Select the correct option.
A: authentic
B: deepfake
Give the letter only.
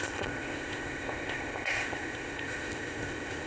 B